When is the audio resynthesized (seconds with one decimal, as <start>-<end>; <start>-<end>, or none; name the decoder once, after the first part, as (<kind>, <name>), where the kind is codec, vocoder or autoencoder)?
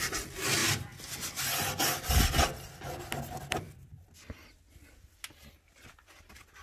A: none